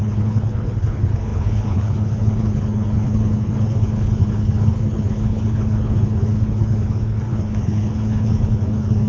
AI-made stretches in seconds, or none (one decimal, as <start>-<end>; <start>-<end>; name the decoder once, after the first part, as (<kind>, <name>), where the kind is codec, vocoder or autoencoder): 0.0-9.1 (codec, HILCodec)